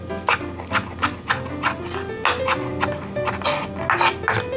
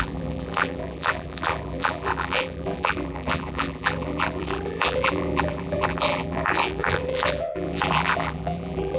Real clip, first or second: first